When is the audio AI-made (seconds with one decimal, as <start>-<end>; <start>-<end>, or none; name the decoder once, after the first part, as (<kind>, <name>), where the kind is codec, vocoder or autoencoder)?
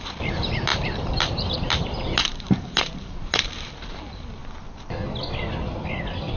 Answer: 0.0-4.4 (vocoder, BigVGAN v2); 5.5-6.4